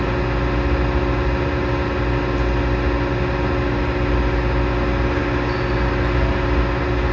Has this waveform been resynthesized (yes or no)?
no